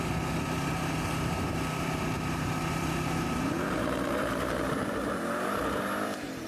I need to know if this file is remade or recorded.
remade